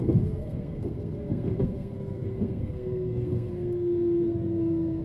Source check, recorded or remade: remade